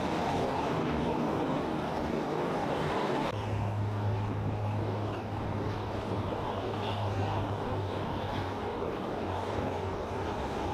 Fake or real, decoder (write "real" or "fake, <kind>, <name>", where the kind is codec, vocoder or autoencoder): fake, codec, DAC